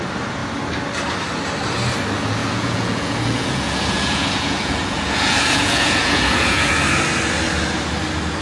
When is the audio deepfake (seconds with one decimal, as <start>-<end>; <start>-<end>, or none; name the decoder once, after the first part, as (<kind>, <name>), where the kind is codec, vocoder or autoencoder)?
2.4-6.7 (vocoder, Vocos)

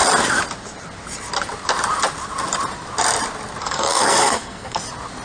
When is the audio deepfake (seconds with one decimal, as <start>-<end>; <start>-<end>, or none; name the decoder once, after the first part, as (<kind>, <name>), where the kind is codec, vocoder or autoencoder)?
3.6-4.8 (codec, SNAC)

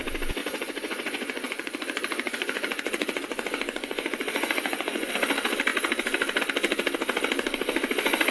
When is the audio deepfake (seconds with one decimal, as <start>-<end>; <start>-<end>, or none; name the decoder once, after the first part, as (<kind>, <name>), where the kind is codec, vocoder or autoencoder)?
0.4-5.1 (vocoder, Vocos)